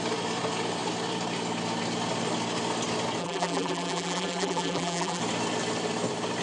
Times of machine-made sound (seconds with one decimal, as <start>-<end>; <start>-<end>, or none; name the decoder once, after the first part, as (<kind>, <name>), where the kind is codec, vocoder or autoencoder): 3.2-5.2 (vocoder, BigVGAN v2)